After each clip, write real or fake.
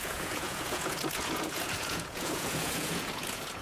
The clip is fake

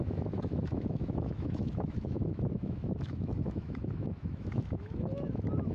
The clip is fake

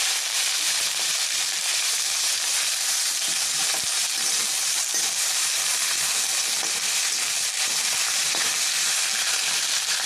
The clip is fake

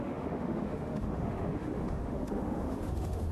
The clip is fake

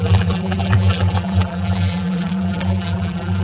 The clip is fake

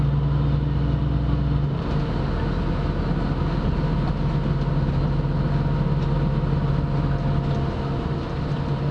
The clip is real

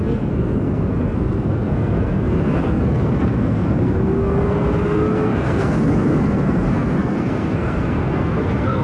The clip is fake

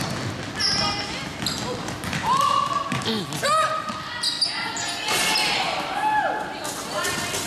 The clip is real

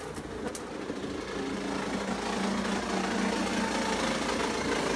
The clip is real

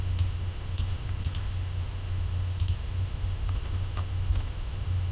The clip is fake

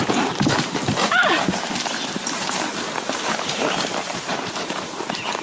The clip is fake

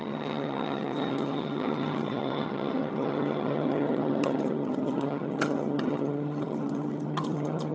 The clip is fake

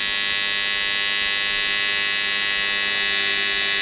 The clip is real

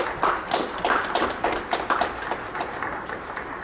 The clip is real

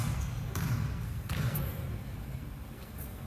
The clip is fake